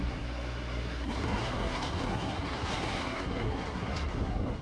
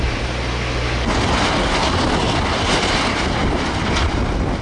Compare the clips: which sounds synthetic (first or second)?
first